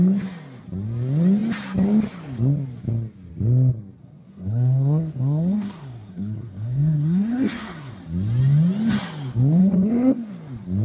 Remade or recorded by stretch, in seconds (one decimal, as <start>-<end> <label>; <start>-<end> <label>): 0.0-4.0 recorded; 4.0-7.9 remade; 7.9-9.6 recorded; 9.6-10.3 remade; 10.3-10.8 recorded